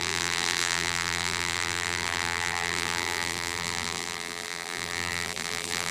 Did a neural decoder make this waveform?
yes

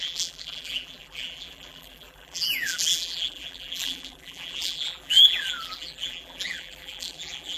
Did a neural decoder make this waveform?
yes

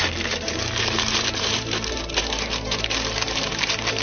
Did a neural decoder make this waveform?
yes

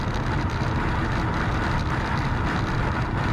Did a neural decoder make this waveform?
no